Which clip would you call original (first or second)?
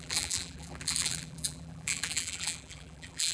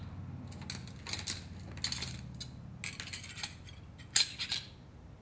second